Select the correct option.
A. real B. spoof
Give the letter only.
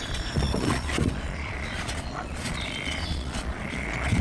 B